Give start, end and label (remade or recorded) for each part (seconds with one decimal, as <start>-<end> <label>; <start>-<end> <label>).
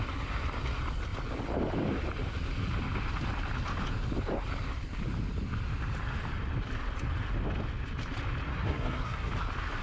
0.0-8.5 recorded; 8.5-9.3 remade; 9.3-9.8 recorded